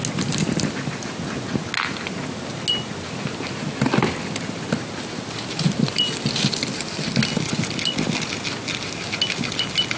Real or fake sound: real